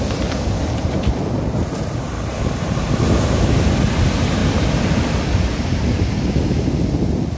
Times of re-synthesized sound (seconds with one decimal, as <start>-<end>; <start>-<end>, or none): 2.3-3.0; 4.4-6.7